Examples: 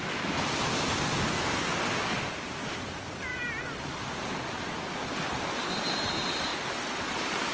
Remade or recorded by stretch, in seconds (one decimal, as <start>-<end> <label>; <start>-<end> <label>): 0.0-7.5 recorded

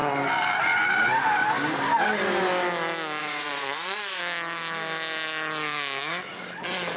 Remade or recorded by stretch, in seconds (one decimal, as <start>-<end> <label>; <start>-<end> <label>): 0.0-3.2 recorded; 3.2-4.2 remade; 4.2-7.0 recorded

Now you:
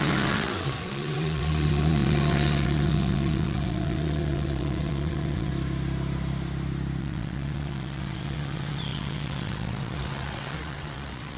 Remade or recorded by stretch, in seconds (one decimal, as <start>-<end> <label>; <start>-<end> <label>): 0.0-5.5 remade; 5.5-7.0 recorded; 7.0-11.4 remade